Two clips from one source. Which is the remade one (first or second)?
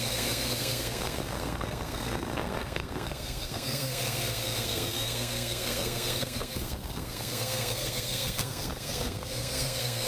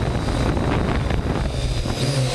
first